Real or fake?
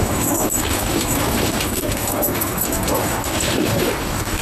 fake